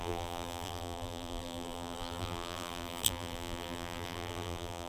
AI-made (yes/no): yes